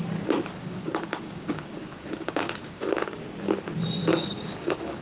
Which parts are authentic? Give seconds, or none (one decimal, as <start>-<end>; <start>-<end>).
0.0-0.5; 3.2-4.0